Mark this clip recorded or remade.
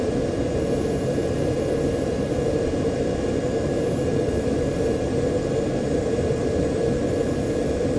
recorded